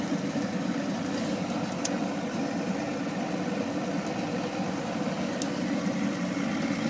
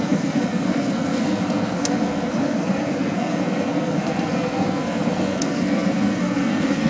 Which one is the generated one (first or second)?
second